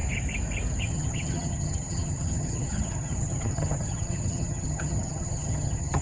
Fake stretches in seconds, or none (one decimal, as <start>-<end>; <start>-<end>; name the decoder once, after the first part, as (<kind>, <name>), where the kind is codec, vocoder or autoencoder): 0.8-6.0 (vocoder, HiFi-GAN)